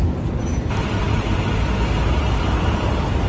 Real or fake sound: real